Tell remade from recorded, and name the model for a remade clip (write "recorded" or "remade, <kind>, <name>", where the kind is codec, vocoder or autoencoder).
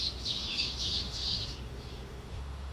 remade, autoencoder, DAC-VAE